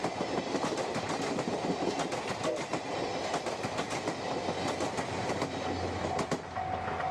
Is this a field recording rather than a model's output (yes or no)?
yes